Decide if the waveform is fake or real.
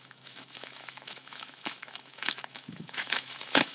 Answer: fake